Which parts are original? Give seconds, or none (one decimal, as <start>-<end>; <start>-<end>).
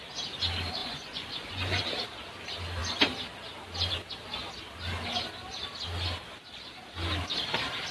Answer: 0.0-0.8; 1.8-7.9